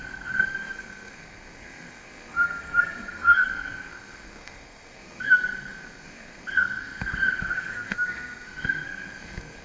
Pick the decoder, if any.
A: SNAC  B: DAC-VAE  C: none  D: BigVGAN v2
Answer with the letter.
A